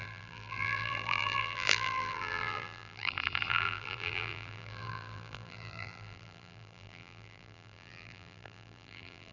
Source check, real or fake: fake